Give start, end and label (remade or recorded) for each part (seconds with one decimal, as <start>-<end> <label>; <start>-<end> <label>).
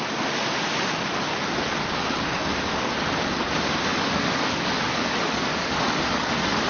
0.0-1.8 recorded; 1.8-2.9 remade; 2.9-3.9 recorded; 3.9-6.0 remade; 6.0-6.7 recorded